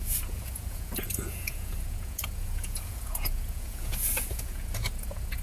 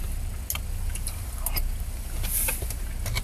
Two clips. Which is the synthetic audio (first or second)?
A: first